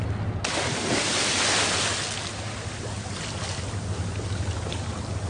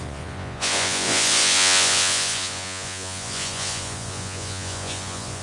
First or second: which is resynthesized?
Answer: second